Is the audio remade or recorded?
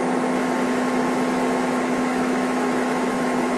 remade